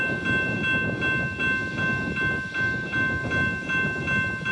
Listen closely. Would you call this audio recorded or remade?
recorded